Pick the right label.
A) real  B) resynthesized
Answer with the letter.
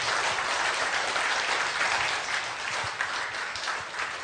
A